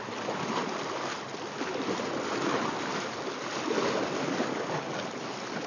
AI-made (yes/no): no